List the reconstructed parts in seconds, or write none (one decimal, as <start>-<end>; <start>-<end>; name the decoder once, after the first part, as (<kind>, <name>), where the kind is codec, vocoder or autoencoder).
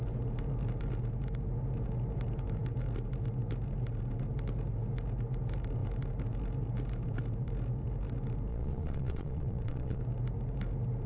8.5-10.0 (vocoder, Vocos)